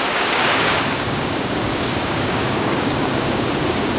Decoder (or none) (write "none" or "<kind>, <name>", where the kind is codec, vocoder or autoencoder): codec, DAC